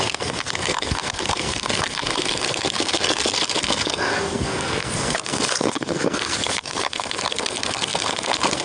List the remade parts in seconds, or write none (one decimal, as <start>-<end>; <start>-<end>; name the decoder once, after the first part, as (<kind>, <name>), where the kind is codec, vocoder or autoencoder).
0.0-8.6 (codec, SNAC)